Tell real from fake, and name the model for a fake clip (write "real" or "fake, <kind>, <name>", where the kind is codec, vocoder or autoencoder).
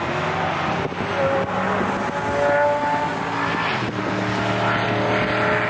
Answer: real